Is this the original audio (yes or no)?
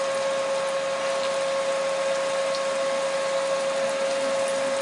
yes